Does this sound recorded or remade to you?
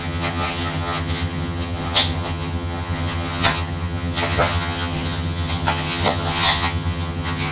remade